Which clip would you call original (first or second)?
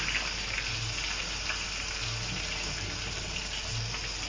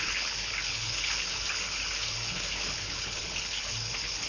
first